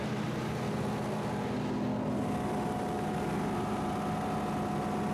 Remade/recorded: recorded